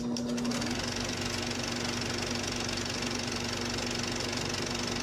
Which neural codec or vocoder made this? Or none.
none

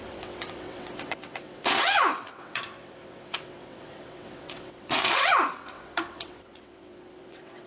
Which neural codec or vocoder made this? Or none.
vocoder, WaveNeXt